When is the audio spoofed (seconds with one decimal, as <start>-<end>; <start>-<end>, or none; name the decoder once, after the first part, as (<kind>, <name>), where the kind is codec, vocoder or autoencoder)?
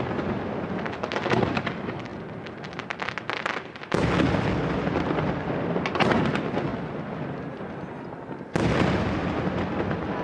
none